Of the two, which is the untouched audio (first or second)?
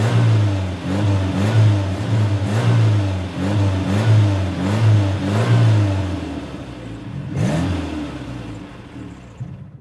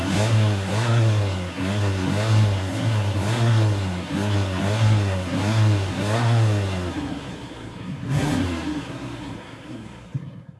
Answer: first